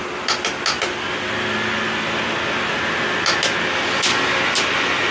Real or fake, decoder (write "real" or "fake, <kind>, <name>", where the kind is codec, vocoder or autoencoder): real